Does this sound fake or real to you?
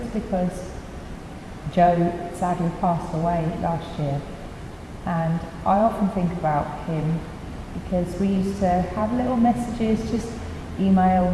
fake